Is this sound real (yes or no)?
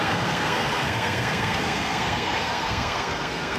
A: no